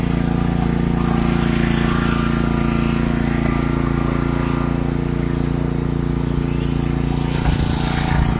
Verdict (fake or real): real